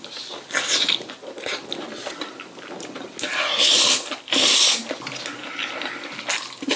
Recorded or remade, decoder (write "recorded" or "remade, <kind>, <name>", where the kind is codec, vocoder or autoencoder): recorded